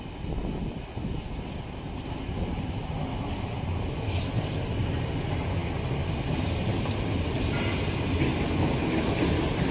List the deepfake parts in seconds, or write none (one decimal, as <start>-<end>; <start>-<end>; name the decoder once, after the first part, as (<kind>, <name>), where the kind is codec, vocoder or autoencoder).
none